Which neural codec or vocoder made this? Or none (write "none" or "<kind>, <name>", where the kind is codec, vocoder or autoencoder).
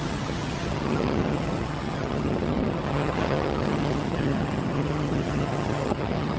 vocoder, HiFi-GAN